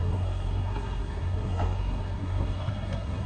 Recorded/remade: remade